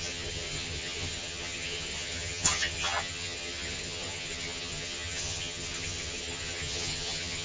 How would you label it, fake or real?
fake